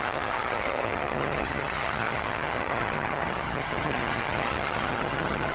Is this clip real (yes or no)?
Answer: no